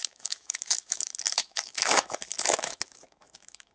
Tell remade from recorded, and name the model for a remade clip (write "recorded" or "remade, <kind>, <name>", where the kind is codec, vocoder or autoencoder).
remade, autoencoder, DAC-VAE